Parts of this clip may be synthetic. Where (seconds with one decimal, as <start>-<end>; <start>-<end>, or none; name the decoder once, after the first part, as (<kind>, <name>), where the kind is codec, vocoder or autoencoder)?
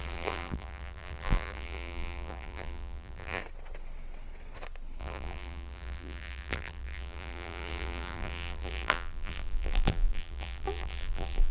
0.0-3.4 (vocoder, BigVGAN v2); 5.0-11.5